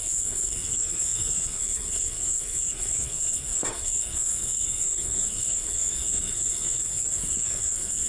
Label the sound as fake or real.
fake